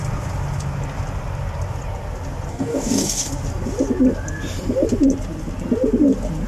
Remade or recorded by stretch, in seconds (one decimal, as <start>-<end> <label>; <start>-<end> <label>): 0.0-2.5 recorded; 2.5-3.3 remade; 3.3-6.5 recorded